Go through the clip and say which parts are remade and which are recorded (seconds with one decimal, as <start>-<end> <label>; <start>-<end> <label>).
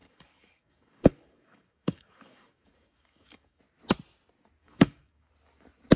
0.0-3.6 remade; 3.6-4.6 recorded; 4.6-5.3 remade; 5.3-6.0 recorded